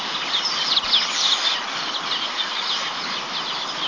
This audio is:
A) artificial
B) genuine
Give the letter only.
B